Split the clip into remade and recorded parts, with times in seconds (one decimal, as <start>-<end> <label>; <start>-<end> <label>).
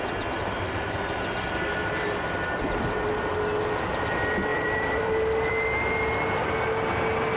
0.0-4.5 recorded; 4.5-5.5 remade; 5.5-7.4 recorded